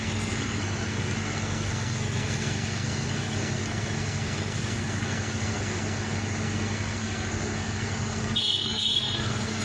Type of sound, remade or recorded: remade